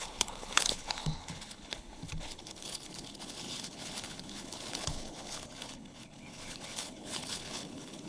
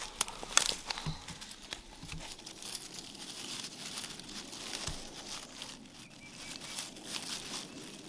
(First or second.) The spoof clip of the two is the first